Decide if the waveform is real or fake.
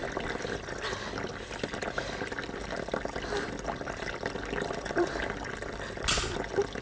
real